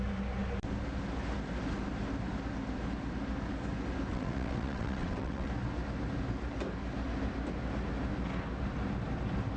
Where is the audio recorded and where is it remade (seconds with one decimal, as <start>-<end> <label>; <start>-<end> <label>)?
0.0-4.1 recorded; 4.1-5.5 remade; 5.5-9.6 recorded